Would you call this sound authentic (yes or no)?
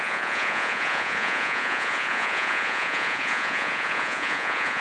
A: no